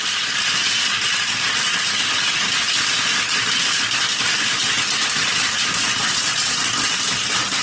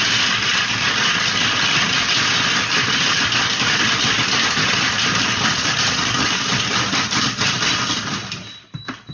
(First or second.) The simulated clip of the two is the second